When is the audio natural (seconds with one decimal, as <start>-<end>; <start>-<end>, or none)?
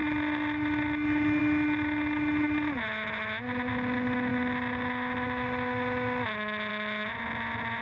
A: 0.0-7.8